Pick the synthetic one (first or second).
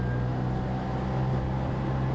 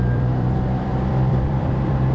second